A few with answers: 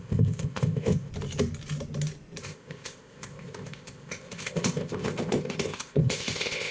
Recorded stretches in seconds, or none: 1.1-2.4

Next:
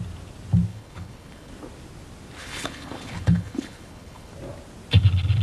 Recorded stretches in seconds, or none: 0.0-0.7; 1.5-2.4; 4.3-5.4

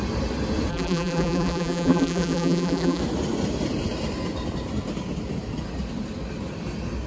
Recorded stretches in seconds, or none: 0.0-0.7; 3.0-7.1

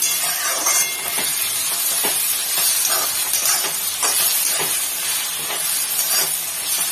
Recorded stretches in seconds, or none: 0.0-6.9

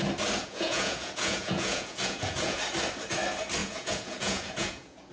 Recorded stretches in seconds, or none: 0.0-0.4; 2.6-3.6

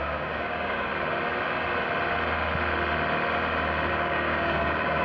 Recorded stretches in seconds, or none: 0.9-3.9

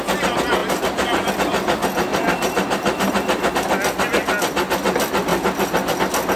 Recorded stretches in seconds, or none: 0.0-0.6; 1.3-2.1; 3.5-6.4

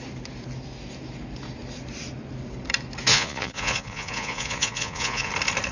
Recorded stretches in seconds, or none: 0.0-3.1; 5.3-5.7